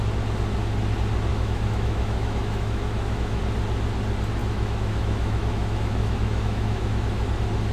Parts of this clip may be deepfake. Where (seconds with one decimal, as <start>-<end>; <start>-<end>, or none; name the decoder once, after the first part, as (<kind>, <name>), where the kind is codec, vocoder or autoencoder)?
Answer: 1.3-3.4 (autoencoder, DAC-VAE); 4.4-7.3

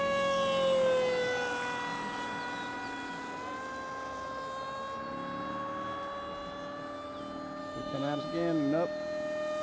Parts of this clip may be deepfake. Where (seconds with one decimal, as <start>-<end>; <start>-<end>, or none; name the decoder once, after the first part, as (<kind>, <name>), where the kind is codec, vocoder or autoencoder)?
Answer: 7.6-8.2 (autoencoder, DAC-VAE)